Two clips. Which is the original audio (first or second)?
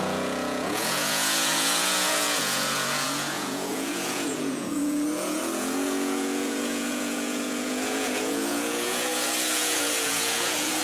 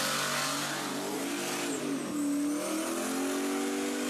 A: second